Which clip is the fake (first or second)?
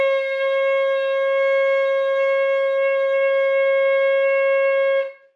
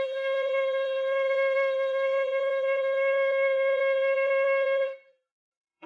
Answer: second